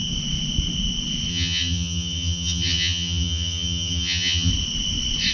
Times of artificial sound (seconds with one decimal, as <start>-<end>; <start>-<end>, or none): 1.3-4.5